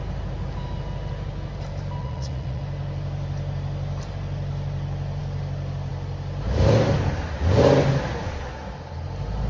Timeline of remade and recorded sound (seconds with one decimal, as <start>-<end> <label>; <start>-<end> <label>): 0.0-2.0 recorded; 2.0-2.6 remade; 2.6-9.5 recorded